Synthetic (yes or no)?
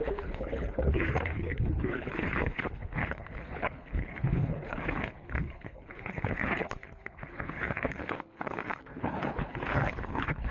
yes